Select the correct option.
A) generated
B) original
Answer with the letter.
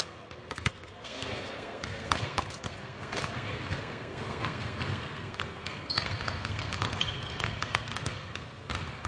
A